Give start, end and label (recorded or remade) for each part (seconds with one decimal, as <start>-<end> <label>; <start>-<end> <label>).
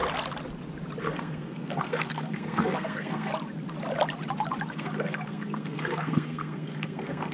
0.0-1.0 recorded; 1.0-3.3 remade; 3.3-4.7 recorded; 4.7-7.3 remade